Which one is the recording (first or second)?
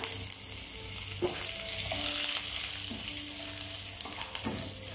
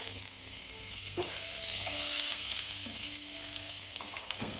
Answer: first